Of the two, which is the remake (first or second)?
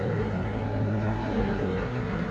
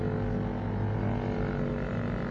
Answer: first